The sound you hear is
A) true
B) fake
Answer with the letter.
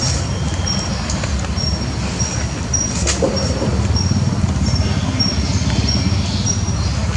A